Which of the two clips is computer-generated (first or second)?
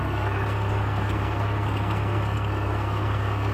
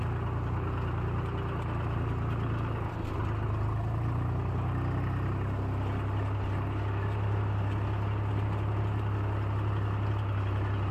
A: first